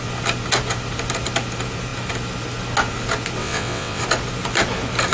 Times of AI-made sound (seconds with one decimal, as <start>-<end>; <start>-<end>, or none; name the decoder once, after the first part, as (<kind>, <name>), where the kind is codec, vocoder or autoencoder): 3.4-4.0 (vocoder, WaveNeXt)